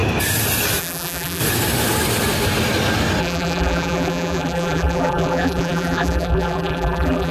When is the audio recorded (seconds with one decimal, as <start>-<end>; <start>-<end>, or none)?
0.0-0.8; 1.4-3.2